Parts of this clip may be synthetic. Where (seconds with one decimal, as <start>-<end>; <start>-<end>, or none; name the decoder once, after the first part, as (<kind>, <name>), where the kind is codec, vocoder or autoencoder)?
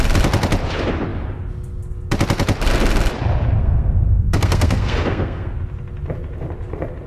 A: 3.6-5.5 (codec, SNAC)